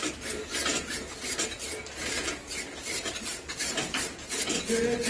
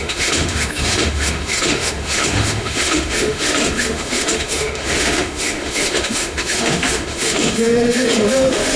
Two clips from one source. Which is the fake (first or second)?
second